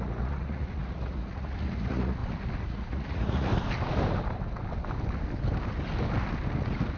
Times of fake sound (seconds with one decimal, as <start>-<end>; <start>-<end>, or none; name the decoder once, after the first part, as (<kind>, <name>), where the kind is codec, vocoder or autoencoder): 0.0-2.2 (vocoder, Vocos); 2.7-3.5